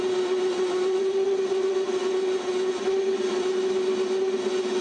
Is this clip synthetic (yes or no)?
no